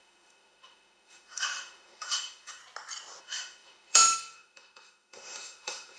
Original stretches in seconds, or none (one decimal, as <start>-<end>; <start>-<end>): 2.6-3.2

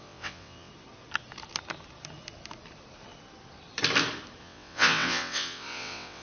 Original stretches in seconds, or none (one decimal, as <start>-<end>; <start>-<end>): 0.7-4.4

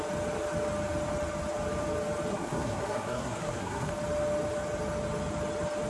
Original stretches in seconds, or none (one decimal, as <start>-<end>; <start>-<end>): 0.0-2.3; 3.9-5.9

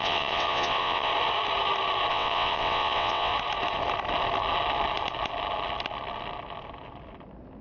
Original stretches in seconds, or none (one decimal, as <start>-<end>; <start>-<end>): 1.1-2.1; 3.3-7.6

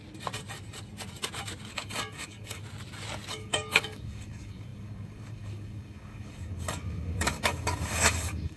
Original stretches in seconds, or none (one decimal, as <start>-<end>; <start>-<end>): 0.0-1.7; 2.6-3.3

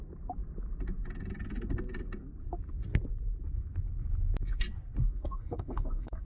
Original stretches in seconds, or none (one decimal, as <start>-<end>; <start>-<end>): 0.0-5.0